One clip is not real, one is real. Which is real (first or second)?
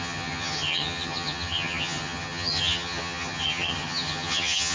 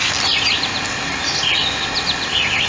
second